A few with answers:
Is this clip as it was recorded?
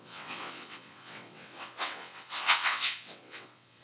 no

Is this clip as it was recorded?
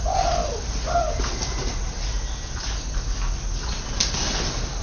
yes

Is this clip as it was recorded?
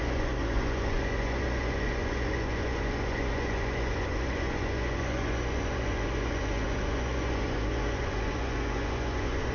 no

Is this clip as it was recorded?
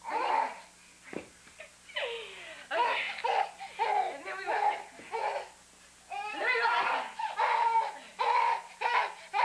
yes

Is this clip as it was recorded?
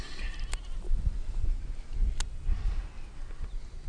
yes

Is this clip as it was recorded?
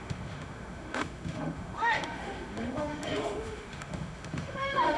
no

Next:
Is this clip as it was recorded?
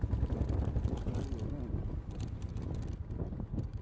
yes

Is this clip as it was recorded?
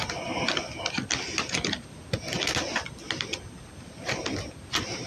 yes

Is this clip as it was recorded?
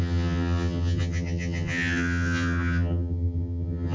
no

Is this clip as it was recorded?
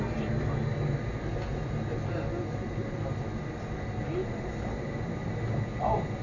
yes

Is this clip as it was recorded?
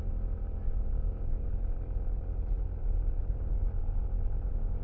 yes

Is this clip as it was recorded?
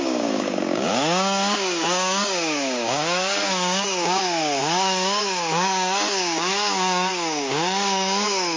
no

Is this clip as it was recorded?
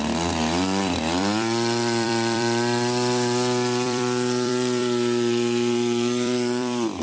no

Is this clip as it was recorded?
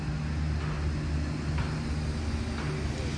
yes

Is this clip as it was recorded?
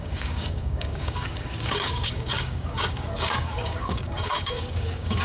no